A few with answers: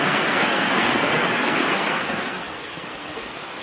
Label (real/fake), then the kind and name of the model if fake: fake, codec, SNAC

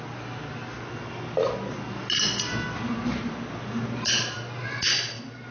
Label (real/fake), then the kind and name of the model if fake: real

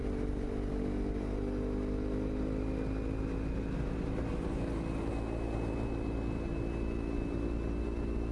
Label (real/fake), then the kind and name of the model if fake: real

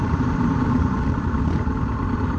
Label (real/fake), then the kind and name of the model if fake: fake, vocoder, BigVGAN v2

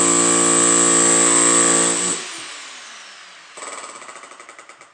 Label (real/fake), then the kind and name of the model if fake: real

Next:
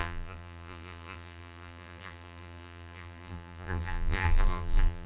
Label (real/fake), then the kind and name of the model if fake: fake, vocoder, BigVGAN v2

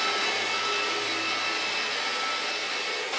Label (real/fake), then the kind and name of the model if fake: real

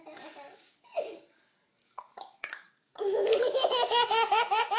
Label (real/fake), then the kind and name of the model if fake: fake, codec, DAC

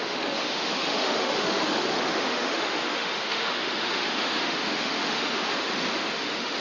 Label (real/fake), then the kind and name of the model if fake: fake, autoencoder, DAC-VAE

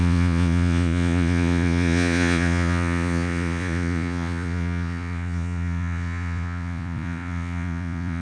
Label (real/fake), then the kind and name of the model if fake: fake, vocoder, Vocos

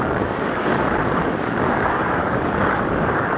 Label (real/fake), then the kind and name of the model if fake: fake, codec, DAC